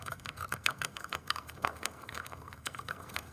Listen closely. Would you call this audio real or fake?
fake